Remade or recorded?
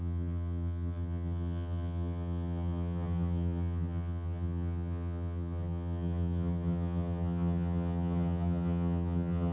remade